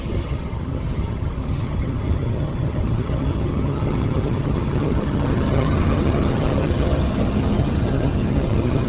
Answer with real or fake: fake